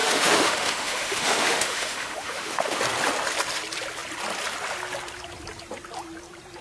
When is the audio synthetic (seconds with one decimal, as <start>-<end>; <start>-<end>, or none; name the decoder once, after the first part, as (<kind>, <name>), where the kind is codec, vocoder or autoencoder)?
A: 0.0-2.8 (autoencoder, DAC-VAE)